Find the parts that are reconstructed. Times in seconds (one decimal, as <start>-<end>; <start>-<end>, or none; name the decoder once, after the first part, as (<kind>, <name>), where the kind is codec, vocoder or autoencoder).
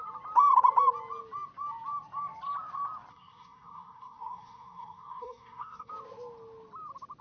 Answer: 3.1-5.9 (codec, SNAC)